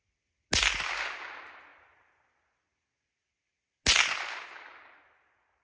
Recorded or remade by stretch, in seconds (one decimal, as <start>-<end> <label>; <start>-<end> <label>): 0.0-5.6 recorded

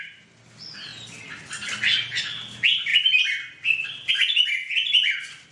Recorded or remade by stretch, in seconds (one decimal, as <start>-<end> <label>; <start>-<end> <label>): 0.0-5.5 recorded

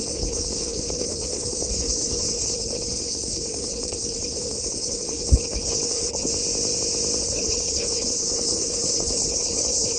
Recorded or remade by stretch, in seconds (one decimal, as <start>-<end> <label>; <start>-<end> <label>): 0.0-6.3 remade; 6.3-7.2 recorded; 7.2-10.0 remade

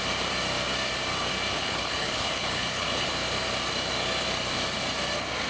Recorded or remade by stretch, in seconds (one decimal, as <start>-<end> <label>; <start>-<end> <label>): 0.0-1.5 recorded; 1.5-3.1 remade; 3.1-5.5 recorded

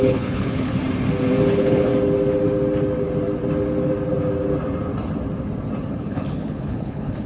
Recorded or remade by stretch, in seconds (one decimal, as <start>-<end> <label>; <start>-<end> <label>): 0.0-0.7 remade; 0.7-1.5 recorded; 1.5-1.9 remade; 1.9-5.9 recorded; 5.9-7.3 remade

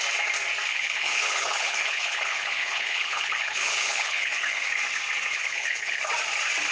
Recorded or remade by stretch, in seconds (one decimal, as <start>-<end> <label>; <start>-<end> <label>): 0.0-0.7 recorded; 0.7-4.7 remade; 4.7-5.3 recorded; 5.3-6.0 remade; 6.0-6.7 recorded

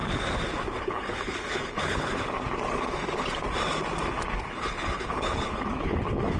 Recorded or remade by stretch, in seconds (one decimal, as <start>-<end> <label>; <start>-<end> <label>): 0.0-0.8 recorded; 0.8-2.1 remade; 2.1-4.4 recorded; 4.4-6.4 remade